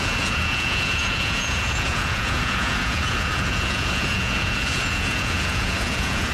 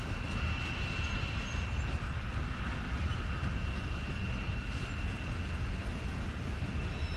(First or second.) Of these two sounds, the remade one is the first